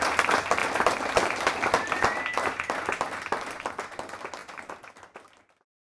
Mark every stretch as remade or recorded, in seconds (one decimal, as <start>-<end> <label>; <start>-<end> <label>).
0.0-4.4 recorded; 4.4-4.9 remade; 4.9-6.0 recorded